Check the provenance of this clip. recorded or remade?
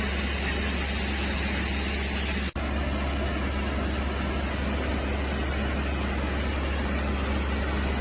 recorded